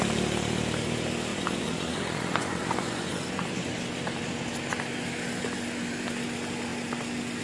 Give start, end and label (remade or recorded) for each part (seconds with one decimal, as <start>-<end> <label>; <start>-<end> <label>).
0.0-1.3 recorded; 1.3-3.8 remade; 3.8-7.4 recorded